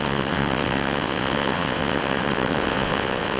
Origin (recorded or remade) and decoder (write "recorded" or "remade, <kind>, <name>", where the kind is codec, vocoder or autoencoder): remade, vocoder, WaveNeXt